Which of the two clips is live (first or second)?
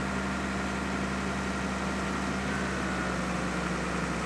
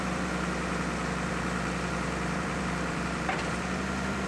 first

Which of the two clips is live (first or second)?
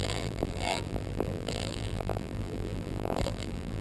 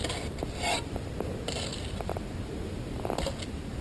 second